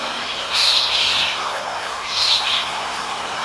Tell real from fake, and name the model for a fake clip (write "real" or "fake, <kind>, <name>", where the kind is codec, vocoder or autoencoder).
fake, codec, SNAC